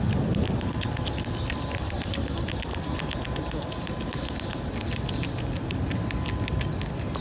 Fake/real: real